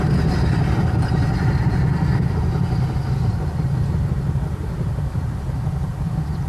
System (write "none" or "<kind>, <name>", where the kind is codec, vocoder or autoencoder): none